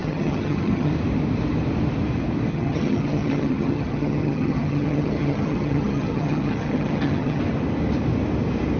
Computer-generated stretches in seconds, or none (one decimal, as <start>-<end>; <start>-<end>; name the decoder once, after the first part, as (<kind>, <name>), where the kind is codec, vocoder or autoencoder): 0.0-0.9 (vocoder, HiFi-GAN); 2.5-7.4